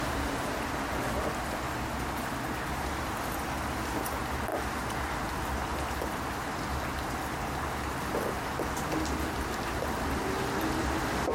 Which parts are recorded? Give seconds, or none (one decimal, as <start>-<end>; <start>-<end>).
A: 0.0-11.3